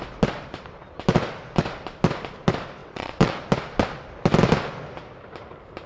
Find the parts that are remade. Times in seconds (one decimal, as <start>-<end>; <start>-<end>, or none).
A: 2.8-3.4